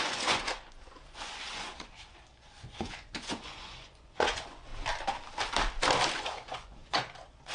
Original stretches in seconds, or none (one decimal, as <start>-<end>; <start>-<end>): 4.7-6.1